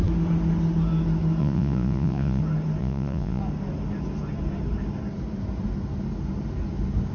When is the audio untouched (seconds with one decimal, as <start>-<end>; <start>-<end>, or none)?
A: 0.0-1.4; 2.4-2.8; 3.4-7.1